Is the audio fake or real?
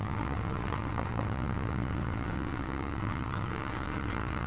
fake